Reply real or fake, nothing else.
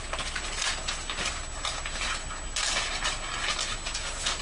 real